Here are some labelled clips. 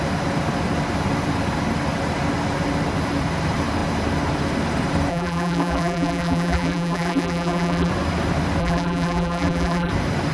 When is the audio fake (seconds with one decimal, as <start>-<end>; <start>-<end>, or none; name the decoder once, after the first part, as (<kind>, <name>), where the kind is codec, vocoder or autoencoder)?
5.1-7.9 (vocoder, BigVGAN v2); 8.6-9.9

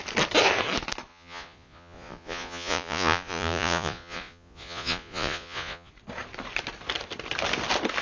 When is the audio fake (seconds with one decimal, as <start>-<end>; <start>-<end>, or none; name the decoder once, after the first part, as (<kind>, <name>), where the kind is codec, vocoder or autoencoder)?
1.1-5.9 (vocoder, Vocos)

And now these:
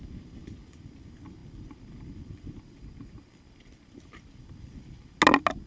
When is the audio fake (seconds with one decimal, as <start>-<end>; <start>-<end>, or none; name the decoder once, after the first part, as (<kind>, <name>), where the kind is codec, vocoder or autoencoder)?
none

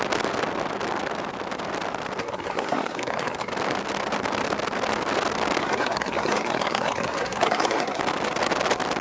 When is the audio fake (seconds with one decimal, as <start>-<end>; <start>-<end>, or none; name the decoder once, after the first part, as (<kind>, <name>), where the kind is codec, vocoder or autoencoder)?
2.2-3.5 (codec, SNAC); 5.6-8.0

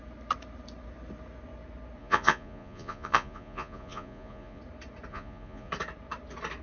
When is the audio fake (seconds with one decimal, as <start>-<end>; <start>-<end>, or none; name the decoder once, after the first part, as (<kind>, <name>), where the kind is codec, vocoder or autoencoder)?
2.0-4.6 (vocoder, Vocos); 5.1-5.7